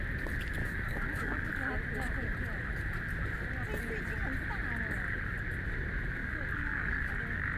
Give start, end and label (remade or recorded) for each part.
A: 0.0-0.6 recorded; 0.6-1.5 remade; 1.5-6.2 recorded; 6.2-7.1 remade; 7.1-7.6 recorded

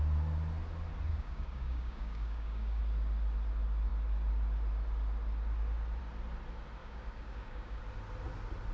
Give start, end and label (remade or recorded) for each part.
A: 0.0-1.1 recorded; 1.1-2.8 remade; 2.8-6.8 recorded; 6.8-7.8 remade; 7.8-8.7 recorded